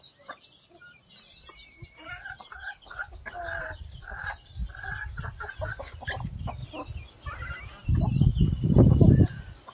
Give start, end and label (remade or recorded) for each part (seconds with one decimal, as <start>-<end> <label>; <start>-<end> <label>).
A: 0.0-2.6 recorded; 2.6-3.4 remade; 3.4-9.7 recorded